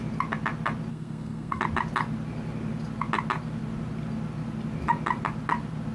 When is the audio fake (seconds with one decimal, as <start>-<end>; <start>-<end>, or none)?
0.9-1.6